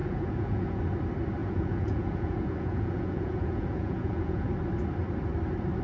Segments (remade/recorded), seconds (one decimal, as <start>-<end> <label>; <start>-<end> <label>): 0.0-0.8 remade; 0.8-1.4 recorded; 1.4-4.5 remade; 4.5-5.8 recorded